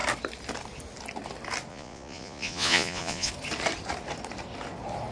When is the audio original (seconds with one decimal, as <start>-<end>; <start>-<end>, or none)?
0.0-1.7; 3.3-5.1